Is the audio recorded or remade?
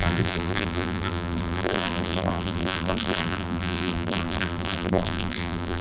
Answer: remade